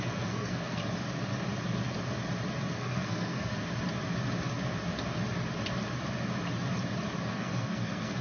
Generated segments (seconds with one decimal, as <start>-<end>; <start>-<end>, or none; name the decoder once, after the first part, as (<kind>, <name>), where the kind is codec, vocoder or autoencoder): 0.0-0.8 (codec, SNAC); 2.7-3.5; 7.3-8.2